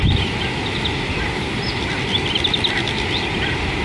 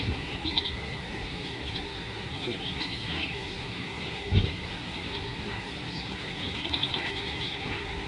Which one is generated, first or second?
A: second